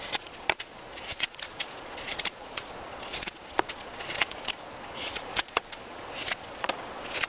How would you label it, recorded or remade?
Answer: remade